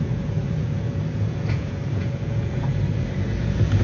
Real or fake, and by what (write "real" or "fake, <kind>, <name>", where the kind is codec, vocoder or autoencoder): fake, vocoder, Vocos